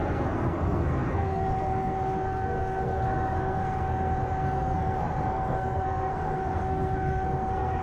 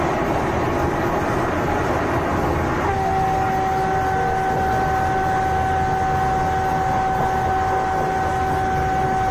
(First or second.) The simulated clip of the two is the first